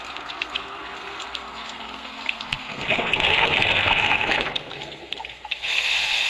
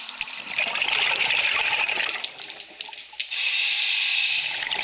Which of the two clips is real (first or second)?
second